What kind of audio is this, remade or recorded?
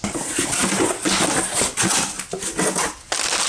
recorded